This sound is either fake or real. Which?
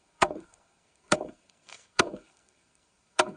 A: fake